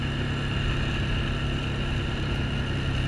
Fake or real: real